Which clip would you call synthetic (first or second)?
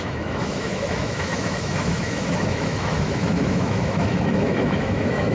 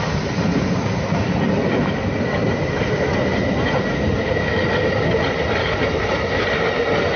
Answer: first